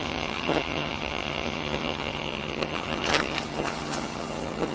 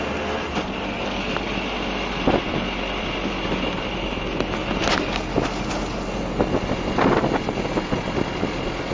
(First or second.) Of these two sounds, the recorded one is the second